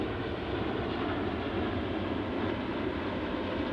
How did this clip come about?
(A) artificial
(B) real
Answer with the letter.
B